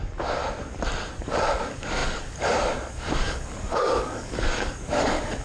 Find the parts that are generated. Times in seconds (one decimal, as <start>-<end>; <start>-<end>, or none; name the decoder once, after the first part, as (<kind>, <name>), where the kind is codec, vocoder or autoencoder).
0.0-0.4 (codec, DAC); 1.1-5.4